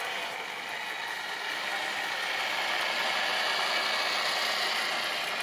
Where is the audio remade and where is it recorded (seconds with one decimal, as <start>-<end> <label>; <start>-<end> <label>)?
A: 0.0-5.4 recorded